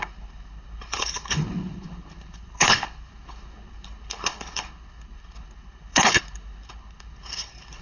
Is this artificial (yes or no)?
yes